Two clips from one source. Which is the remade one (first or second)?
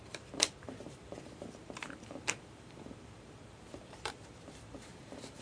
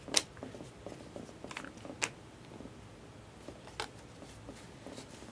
first